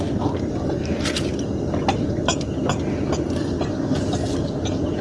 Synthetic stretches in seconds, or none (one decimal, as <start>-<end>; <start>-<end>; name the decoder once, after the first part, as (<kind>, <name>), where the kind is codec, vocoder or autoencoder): none